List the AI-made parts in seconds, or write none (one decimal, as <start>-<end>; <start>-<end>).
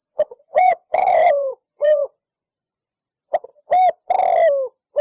0.0-3.0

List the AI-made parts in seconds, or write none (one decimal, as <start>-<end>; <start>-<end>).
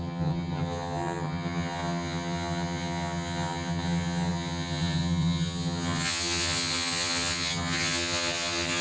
0.0-8.8